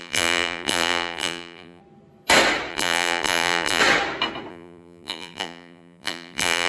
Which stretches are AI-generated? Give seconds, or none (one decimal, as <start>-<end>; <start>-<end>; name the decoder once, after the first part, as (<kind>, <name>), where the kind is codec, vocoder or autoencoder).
0.0-1.8 (vocoder, BigVGAN v2); 2.7-3.8; 4.5-6.7